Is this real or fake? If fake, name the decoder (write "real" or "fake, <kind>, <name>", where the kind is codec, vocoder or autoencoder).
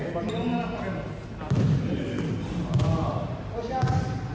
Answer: real